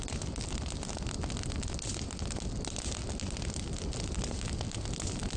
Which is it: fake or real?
real